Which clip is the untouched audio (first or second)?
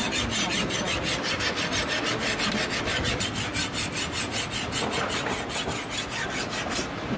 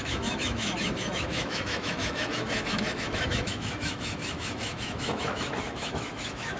first